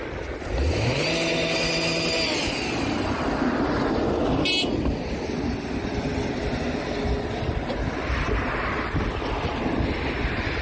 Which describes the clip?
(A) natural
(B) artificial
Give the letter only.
A